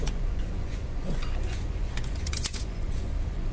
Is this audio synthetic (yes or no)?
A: yes